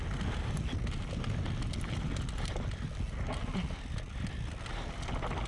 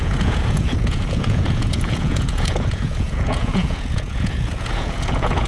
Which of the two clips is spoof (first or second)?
second